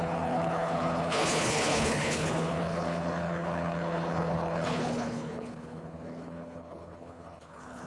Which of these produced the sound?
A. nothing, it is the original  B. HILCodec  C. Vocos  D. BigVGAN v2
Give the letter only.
B